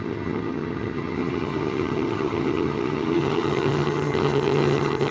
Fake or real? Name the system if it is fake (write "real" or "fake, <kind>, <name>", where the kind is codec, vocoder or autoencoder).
fake, vocoder, HiFi-GAN